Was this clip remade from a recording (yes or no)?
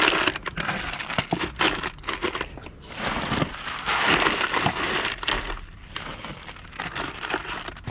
no